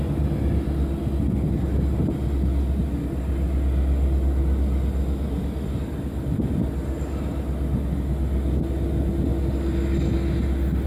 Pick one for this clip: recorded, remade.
recorded